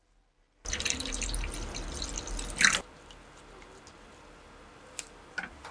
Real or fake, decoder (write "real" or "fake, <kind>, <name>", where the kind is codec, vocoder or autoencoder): real